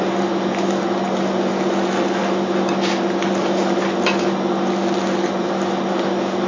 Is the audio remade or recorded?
recorded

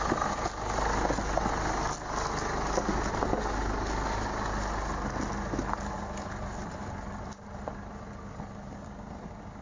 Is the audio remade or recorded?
recorded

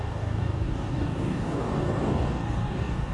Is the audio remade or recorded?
remade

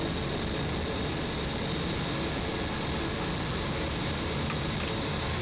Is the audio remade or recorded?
recorded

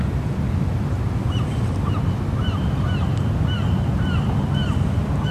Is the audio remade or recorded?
recorded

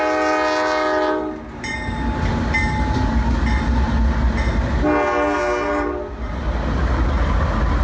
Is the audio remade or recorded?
recorded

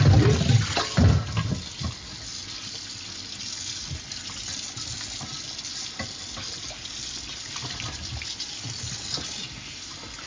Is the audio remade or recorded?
recorded